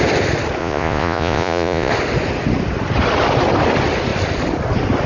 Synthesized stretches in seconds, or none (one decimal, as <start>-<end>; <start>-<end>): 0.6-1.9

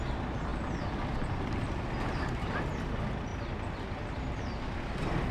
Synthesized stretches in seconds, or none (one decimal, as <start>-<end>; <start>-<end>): 3.3-5.3

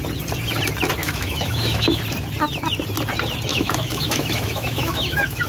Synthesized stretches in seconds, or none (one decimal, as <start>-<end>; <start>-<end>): 1.0-2.0; 3.5-5.5

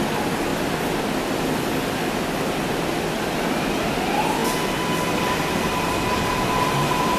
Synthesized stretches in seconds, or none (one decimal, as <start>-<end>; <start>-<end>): none

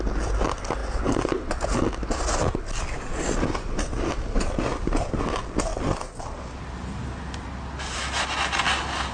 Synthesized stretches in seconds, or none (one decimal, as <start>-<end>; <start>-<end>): none

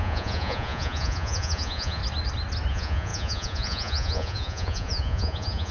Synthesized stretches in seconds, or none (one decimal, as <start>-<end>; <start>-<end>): 0.0-2.0; 2.7-5.7

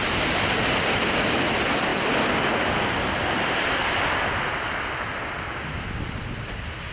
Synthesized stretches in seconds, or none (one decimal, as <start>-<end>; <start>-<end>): none